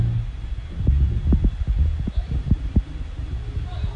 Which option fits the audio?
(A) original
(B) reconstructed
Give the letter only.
A